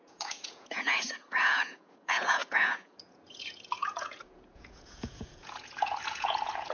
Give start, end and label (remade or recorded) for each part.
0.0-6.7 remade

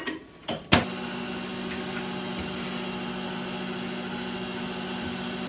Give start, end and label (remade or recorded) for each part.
0.0-5.5 recorded

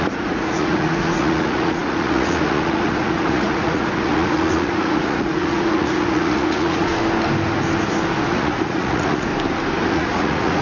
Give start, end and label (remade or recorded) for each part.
0.0-6.9 remade; 6.9-8.3 recorded; 8.3-9.3 remade; 9.3-9.9 recorded; 9.9-10.6 remade

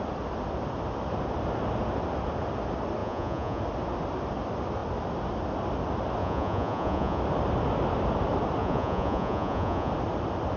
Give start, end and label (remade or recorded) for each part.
0.0-3.0 recorded; 3.0-3.6 remade; 3.6-6.2 recorded; 6.2-7.2 remade; 7.2-8.6 recorded; 8.6-9.9 remade; 9.9-10.6 recorded

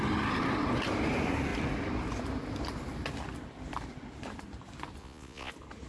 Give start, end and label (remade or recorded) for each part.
0.0-5.0 recorded; 5.0-5.5 remade; 5.5-5.9 recorded